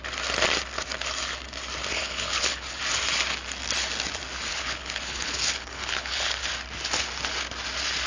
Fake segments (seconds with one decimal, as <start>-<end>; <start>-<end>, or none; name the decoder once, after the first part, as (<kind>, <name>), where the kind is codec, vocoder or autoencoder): 2.0-2.8 (codec, HILCodec); 4.5-6.5